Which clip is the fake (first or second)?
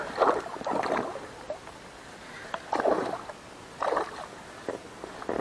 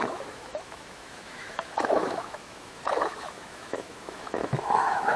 second